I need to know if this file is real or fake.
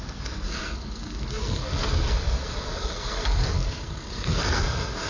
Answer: fake